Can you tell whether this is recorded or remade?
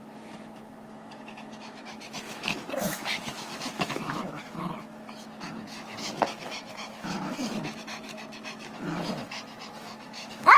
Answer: remade